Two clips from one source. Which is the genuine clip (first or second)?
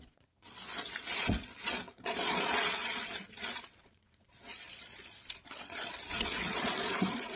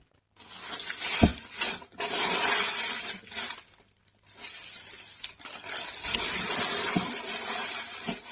second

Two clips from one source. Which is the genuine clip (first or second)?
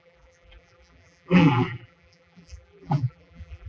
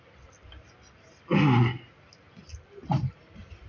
second